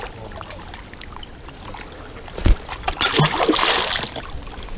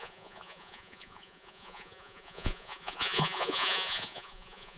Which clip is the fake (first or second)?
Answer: second